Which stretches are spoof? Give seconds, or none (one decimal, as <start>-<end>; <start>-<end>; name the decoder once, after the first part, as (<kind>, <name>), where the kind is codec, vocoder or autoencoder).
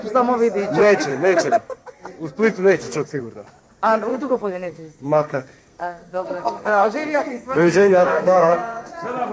1.1-2.1 (codec, SNAC); 2.5-3.2; 4.1-8.9